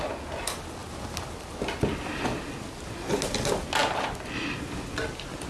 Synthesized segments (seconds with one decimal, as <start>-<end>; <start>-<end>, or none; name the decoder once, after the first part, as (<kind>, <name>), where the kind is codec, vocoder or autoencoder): none